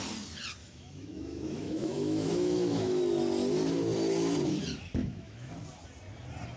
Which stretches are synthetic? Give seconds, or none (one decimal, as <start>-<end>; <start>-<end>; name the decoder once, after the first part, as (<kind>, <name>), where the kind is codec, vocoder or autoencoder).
0.6-3.0 (autoencoder, DAC-VAE); 5.0-5.5